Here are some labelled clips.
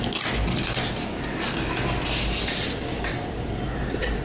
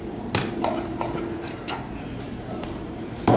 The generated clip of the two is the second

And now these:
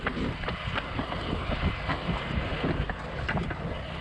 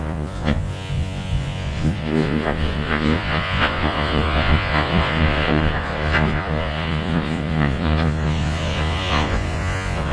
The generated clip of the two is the second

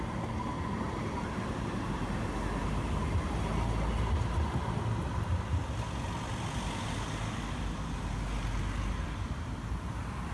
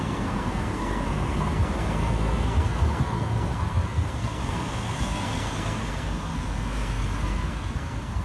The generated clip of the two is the second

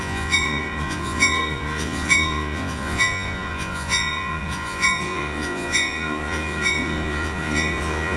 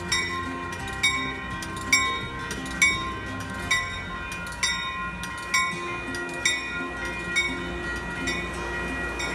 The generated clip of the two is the first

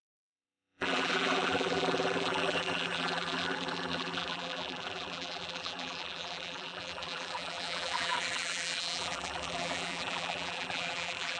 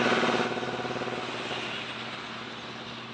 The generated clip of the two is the first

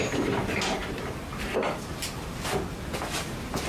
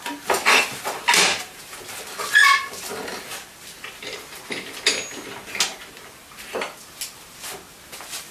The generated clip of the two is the first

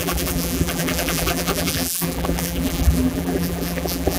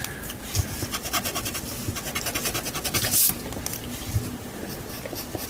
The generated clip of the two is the first